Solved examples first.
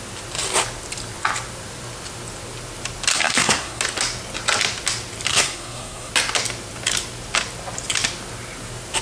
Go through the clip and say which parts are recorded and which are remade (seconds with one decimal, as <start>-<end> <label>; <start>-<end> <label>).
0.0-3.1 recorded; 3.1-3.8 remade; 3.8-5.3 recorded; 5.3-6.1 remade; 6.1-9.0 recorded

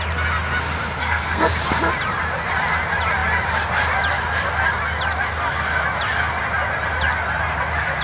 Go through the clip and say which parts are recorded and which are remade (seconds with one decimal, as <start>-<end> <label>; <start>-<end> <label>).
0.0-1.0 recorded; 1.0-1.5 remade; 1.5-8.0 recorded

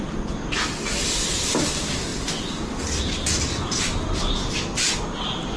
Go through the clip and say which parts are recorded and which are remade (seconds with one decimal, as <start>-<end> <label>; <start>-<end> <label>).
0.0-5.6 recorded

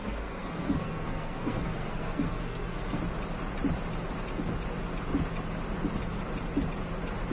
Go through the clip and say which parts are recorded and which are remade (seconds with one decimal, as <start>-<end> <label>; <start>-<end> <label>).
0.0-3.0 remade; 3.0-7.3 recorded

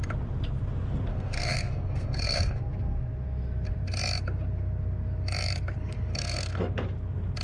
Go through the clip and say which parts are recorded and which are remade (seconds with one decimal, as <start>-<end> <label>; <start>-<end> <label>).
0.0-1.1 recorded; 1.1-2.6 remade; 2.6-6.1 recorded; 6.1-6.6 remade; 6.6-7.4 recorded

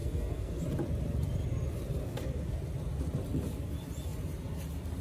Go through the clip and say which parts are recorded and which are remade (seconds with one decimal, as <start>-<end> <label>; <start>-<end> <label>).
0.0-0.6 remade; 0.6-2.0 recorded; 2.0-2.5 remade; 2.5-5.0 recorded